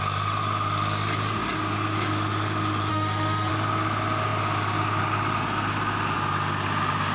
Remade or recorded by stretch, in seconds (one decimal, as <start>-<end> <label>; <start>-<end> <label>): 0.0-2.9 recorded; 2.9-3.5 remade; 3.5-7.1 recorded

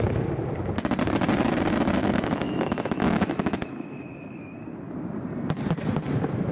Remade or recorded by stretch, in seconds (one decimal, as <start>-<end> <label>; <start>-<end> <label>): 0.0-2.0 recorded; 2.0-4.6 remade; 4.6-6.5 recorded

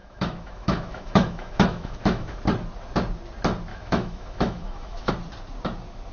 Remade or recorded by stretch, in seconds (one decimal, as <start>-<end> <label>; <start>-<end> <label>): 0.0-2.4 remade; 2.4-3.7 recorded; 3.7-5.1 remade; 5.1-6.1 recorded

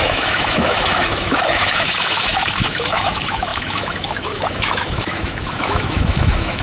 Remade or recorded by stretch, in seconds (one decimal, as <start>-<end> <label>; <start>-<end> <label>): 0.0-6.6 remade

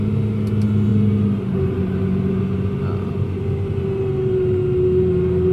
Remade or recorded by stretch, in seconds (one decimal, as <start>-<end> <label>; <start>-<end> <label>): 0.0-5.5 recorded